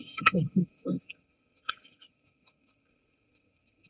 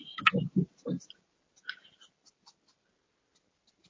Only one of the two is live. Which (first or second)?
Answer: second